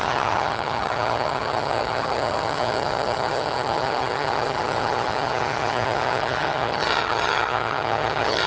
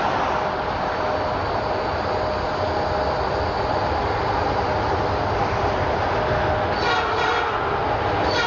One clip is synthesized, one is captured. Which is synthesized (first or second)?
first